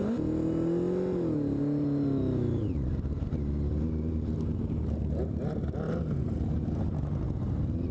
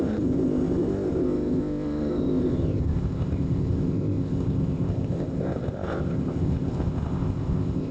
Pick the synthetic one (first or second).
second